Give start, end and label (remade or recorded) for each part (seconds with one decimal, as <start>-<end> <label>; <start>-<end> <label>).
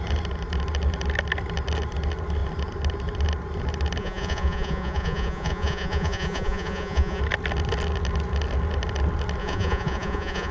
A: 0.0-4.0 recorded; 4.0-7.2 remade; 7.2-9.4 recorded; 9.4-10.5 remade